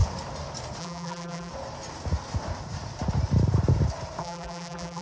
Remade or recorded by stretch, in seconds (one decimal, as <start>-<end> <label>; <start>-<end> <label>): 0.0-0.8 recorded; 0.8-1.5 remade; 1.5-4.2 recorded; 4.2-5.0 remade